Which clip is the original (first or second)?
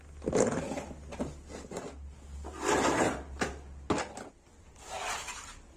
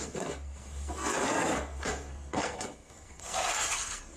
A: first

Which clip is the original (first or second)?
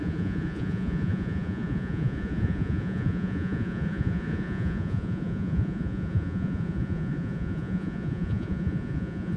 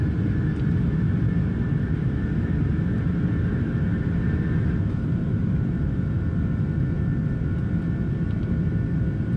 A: second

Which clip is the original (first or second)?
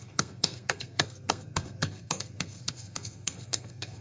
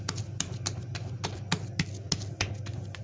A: second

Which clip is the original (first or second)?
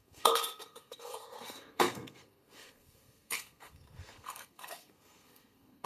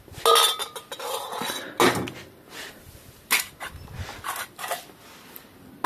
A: second